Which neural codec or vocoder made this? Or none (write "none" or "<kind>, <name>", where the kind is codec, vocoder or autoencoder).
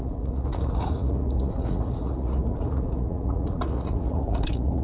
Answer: vocoder, Vocos